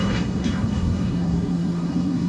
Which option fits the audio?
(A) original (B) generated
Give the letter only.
B